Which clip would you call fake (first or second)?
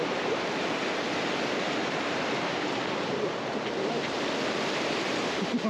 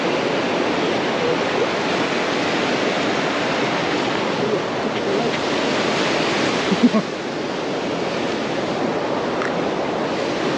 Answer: first